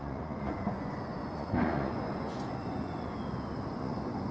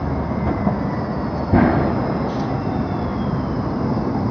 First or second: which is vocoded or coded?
first